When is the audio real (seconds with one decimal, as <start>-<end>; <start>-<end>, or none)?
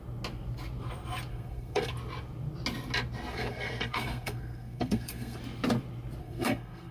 0.0-1.3; 1.9-3.3; 5.4-6.2